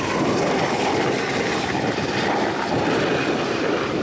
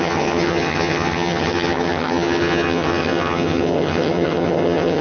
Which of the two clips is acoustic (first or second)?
first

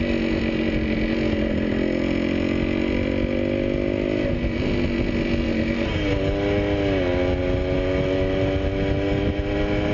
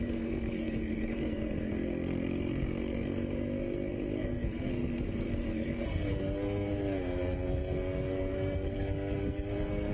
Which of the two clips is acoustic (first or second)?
first